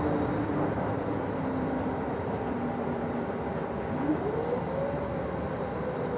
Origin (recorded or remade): recorded